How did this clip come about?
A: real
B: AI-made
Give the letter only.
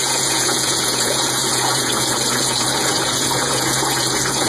B